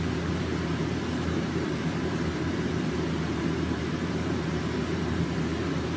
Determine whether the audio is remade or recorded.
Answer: remade